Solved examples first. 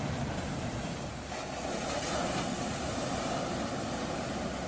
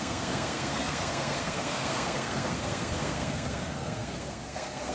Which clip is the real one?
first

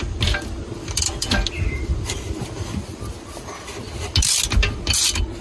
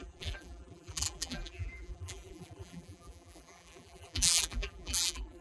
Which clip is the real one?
first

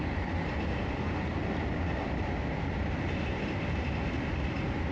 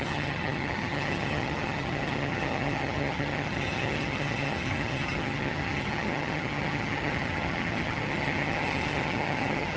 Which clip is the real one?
first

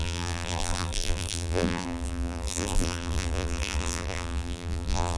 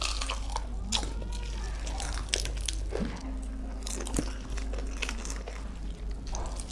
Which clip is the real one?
second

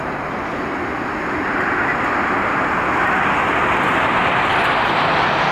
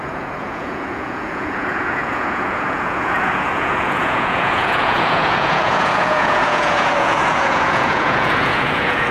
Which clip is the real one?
first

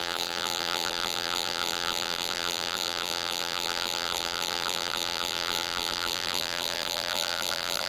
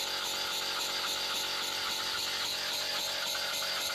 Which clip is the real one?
second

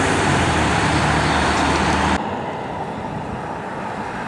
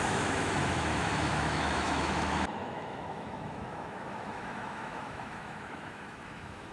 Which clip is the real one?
first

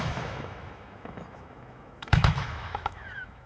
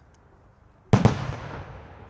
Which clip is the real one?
second